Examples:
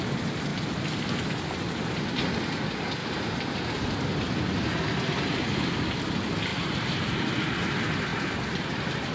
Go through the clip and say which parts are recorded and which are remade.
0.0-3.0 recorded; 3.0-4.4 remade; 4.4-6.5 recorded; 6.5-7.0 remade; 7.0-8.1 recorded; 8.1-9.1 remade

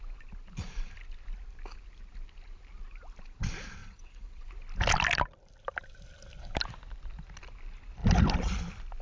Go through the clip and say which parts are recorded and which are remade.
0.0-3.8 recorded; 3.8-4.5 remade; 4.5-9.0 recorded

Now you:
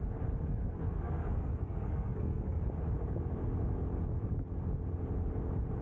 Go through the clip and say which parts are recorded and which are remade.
0.0-0.5 recorded; 0.5-2.6 remade; 2.6-5.8 recorded

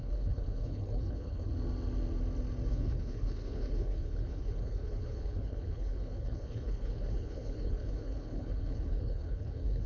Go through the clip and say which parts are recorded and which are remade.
0.0-1.5 remade; 1.5-2.7 recorded; 2.7-9.9 remade

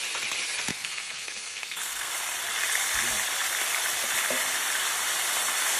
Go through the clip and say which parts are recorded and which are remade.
0.0-0.7 recorded; 0.7-2.1 remade; 2.1-5.8 recorded